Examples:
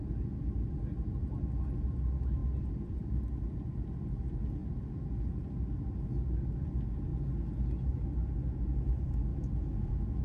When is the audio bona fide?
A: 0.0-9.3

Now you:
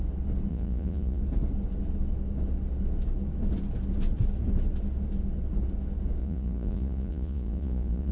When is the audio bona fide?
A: 0.0-0.5; 1.2-6.2

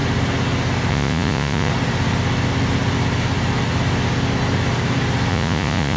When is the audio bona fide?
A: 0.0-0.9; 1.7-5.3

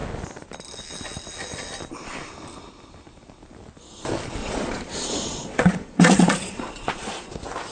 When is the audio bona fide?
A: 0.0-4.4; 7.3-7.7

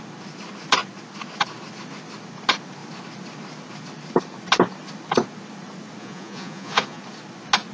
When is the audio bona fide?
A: 0.0-6.0; 7.0-7.7

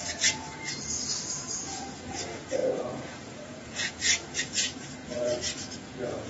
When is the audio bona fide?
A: 0.5-1.6

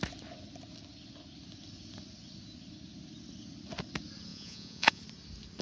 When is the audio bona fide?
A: 0.0-4.3; 5.0-5.6